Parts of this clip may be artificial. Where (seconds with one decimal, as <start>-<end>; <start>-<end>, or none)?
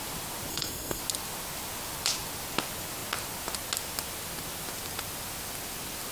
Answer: 0.5-1.0